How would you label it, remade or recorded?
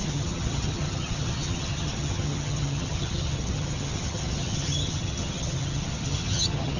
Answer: remade